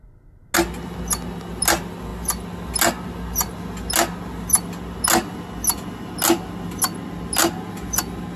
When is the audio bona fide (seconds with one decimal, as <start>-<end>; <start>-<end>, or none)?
0.0-8.4